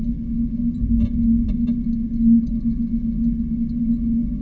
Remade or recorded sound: recorded